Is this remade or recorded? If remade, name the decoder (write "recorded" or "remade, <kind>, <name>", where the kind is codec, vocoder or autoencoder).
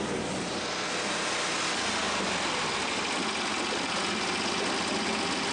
recorded